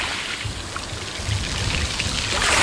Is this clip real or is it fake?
real